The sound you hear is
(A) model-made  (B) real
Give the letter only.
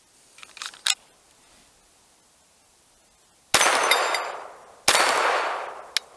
B